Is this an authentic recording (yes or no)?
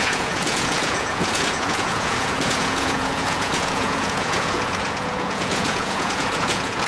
no